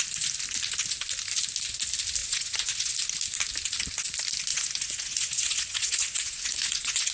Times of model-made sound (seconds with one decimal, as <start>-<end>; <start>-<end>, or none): 2.2-2.9; 4.5-7.1